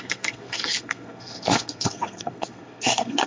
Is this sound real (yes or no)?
no